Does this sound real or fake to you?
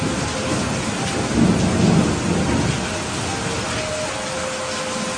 real